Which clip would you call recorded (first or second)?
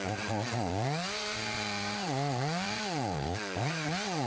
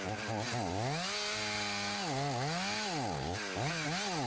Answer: second